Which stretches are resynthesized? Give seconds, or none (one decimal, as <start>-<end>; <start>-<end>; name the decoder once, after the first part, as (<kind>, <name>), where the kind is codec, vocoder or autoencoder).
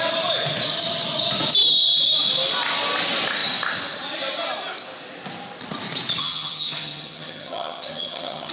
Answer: 6.2-8.5 (vocoder, HiFi-GAN)